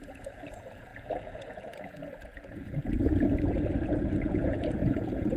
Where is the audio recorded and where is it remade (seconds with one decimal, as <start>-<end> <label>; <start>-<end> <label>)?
0.0-5.4 remade